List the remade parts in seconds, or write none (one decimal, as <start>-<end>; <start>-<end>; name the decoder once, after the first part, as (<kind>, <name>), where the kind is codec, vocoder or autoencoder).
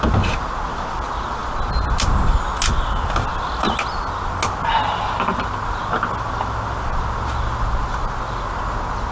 none